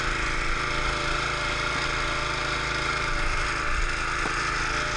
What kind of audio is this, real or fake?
real